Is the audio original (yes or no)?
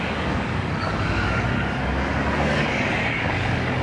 no